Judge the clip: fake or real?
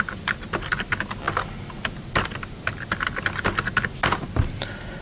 real